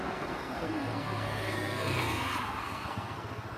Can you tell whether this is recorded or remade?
remade